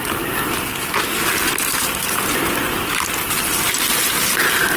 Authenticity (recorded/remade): recorded